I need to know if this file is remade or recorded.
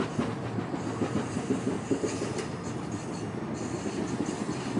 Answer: recorded